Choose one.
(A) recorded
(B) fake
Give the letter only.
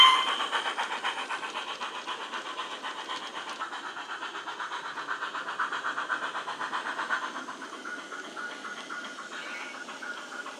A